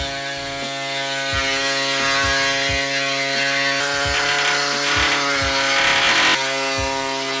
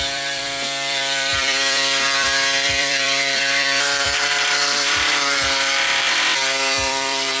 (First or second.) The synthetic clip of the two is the second